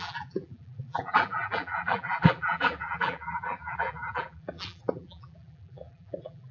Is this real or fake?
fake